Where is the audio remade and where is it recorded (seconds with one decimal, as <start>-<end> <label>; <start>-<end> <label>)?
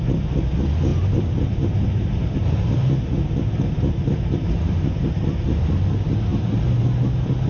0.0-0.9 recorded; 0.9-5.1 remade; 5.1-6.3 recorded; 6.3-6.8 remade; 6.8-7.5 recorded